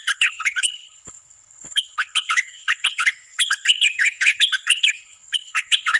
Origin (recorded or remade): remade